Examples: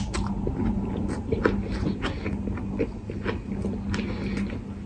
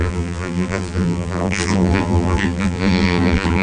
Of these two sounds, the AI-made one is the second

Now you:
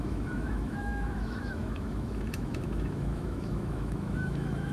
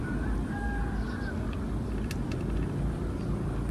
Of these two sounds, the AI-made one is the first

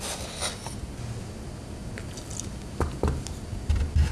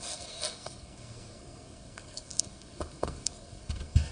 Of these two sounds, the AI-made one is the second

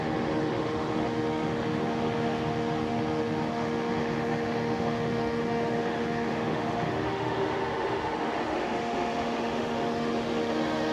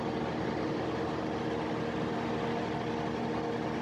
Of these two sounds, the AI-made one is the first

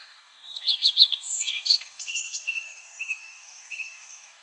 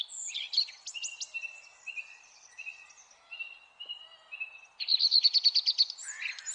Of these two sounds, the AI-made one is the first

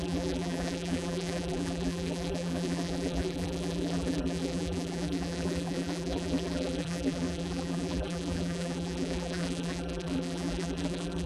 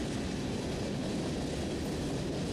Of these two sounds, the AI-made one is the first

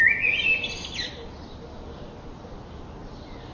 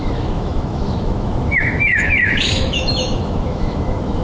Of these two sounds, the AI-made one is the second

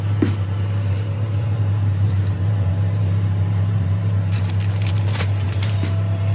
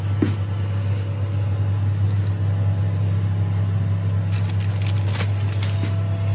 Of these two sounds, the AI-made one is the first